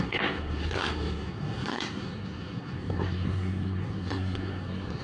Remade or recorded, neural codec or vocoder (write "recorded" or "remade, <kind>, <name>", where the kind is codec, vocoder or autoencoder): remade, codec, SNAC